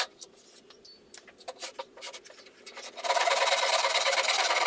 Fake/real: real